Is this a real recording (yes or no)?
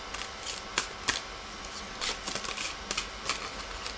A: yes